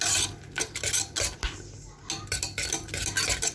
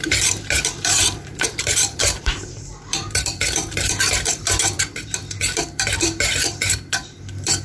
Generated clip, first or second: second